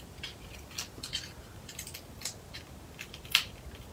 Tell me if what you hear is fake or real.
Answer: real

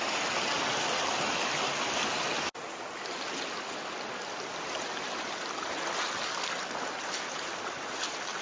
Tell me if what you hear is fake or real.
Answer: real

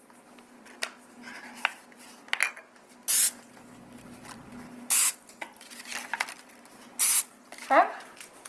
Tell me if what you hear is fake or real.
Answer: real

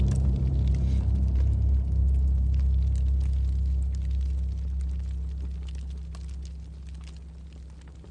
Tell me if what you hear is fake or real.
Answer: real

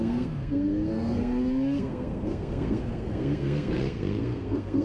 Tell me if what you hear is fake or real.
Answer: fake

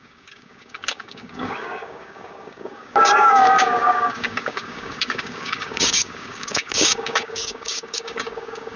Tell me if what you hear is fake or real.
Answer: fake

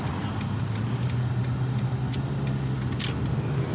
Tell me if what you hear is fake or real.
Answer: real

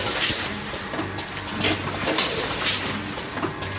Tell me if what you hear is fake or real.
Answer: real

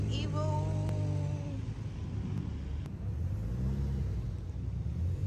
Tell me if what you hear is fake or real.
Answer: real